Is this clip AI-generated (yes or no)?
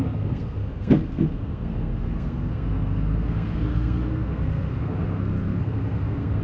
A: yes